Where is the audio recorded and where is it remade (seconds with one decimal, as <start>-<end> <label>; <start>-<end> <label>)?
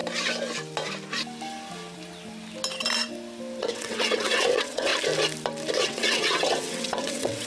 0.0-3.6 recorded; 3.6-4.9 remade; 4.9-5.7 recorded; 5.7-7.5 remade